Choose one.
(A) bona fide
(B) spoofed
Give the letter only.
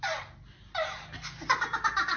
A